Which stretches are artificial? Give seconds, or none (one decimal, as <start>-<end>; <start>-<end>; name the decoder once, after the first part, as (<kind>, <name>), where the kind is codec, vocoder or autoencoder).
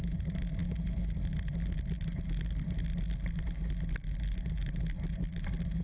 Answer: none